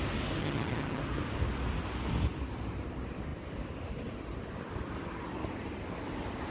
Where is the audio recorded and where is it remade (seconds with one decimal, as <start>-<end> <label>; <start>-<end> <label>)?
0.0-0.4 recorded; 0.4-1.0 remade; 1.0-6.5 recorded